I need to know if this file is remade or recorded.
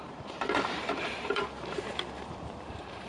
remade